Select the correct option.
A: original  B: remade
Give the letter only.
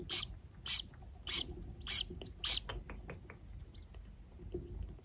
A